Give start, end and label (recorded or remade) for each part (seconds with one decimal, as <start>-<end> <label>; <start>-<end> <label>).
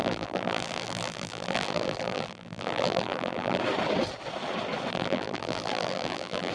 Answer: 0.0-3.6 remade; 3.6-4.9 recorded; 4.9-6.5 remade